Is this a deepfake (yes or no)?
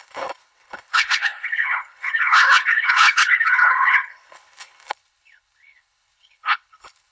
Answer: yes